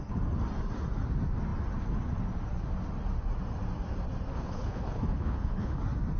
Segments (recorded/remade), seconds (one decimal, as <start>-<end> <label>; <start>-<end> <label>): 0.0-4.3 recorded; 4.3-5.8 remade; 5.8-6.2 recorded